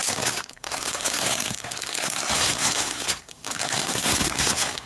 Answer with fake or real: fake